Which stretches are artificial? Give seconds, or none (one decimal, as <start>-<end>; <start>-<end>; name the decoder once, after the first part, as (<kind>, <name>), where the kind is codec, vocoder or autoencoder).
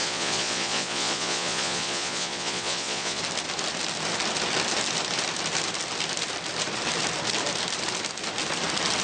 0.0-3.2 (vocoder, Vocos)